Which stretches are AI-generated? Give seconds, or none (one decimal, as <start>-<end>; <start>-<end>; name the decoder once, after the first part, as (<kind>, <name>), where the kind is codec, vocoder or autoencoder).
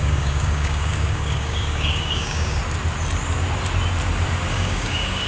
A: 0.0-2.6 (codec, DAC); 4.5-5.3